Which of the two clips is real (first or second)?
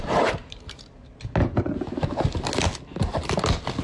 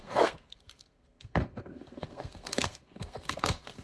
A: first